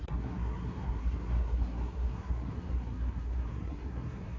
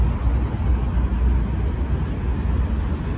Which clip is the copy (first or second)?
first